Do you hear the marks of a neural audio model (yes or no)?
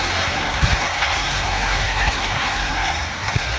yes